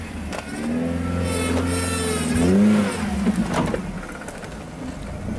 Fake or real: real